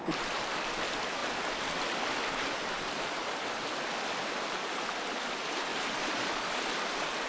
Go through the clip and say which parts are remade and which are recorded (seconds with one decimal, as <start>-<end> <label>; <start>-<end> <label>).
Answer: 0.0-5.7 recorded; 5.7-6.3 remade; 6.3-7.3 recorded